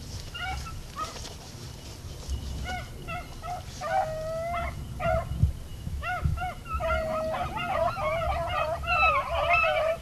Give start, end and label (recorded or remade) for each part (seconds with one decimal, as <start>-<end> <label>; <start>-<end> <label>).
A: 0.0-5.7 recorded; 5.7-6.4 remade; 6.4-10.0 recorded